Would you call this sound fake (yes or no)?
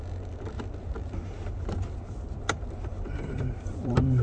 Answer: yes